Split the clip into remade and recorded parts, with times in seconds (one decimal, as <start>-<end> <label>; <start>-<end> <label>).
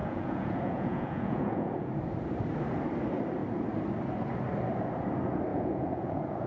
0.0-1.9 remade; 1.9-5.5 recorded; 5.5-6.5 remade